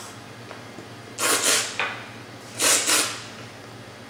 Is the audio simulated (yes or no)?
no